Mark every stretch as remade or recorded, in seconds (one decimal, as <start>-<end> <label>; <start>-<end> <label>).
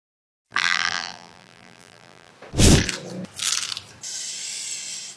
0.0-0.5 recorded; 0.5-2.3 remade; 2.3-5.2 recorded